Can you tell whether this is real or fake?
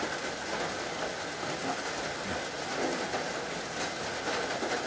real